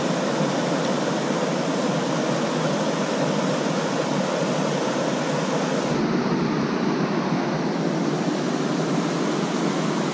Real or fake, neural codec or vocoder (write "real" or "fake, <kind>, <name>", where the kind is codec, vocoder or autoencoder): real